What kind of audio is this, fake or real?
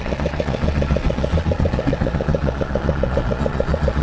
fake